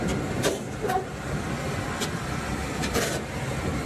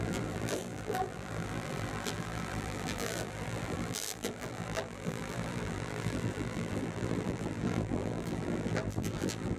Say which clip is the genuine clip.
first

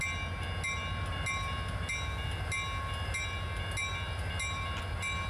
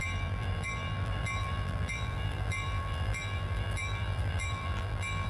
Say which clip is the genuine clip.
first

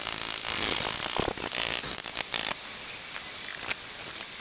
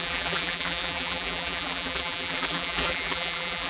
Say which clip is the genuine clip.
first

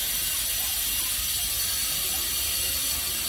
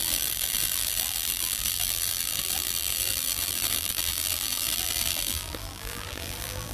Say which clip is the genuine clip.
first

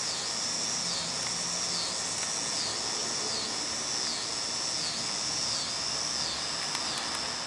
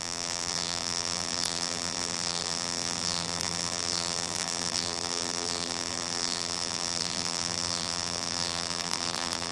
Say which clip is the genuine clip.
first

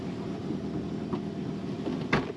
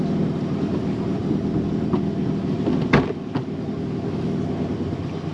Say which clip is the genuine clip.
second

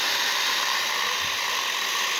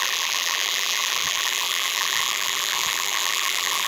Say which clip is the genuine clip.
first